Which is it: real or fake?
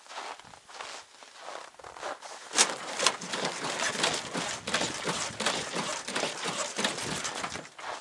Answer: real